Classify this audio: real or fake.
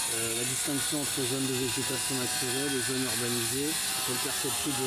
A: real